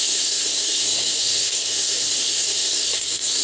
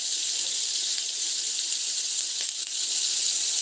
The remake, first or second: first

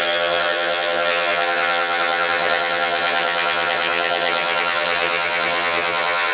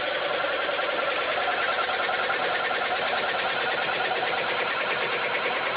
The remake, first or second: first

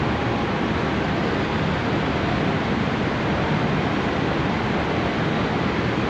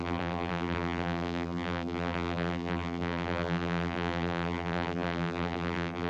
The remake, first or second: second